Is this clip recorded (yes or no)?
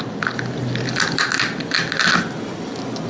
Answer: yes